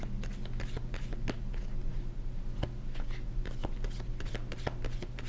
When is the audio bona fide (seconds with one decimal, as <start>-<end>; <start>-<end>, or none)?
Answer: 0.0-1.9; 2.6-3.6; 4.3-5.3